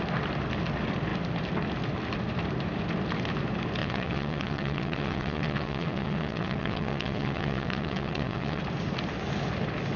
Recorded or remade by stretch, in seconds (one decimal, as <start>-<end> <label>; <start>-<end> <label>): 0.0-3.8 recorded; 3.8-8.6 remade; 8.6-10.0 recorded